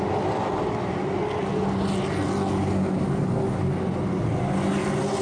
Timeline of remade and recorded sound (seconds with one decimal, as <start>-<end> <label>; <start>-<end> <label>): 0.0-5.2 recorded